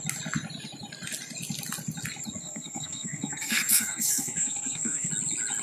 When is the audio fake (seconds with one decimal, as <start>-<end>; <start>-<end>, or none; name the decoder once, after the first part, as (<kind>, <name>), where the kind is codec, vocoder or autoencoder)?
2.4-5.1 (codec, SNAC)